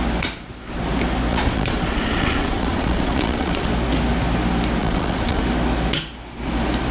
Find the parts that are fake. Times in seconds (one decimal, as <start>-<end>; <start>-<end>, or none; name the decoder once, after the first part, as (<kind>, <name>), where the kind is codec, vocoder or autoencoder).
1.3-3.7 (vocoder, Vocos); 4.8-5.4